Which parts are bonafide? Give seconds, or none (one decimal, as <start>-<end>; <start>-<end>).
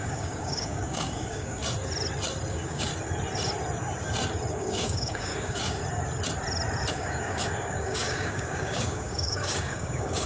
1.6-2.5; 2.9-4.5; 5.8-6.9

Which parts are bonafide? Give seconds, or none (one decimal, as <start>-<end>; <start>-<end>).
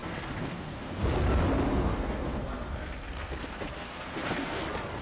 0.9-1.7; 4.6-5.0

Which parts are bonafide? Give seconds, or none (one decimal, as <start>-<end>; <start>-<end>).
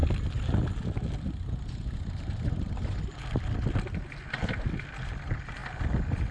3.8-5.6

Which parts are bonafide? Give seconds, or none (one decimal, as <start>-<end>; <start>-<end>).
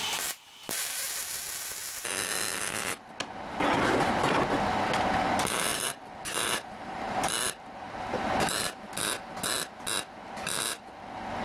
0.0-5.7; 7.3-11.4